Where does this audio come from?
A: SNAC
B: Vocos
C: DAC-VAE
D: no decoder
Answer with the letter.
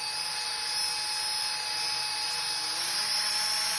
D